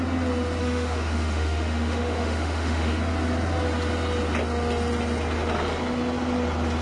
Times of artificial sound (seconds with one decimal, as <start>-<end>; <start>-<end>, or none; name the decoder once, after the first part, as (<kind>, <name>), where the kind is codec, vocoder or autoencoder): 0.6-3.0 (autoencoder, DAC-VAE)